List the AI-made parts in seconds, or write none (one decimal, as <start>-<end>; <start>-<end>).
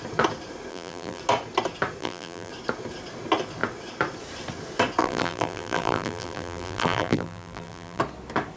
0.7-1.2; 2.0-2.5; 5.0-8.0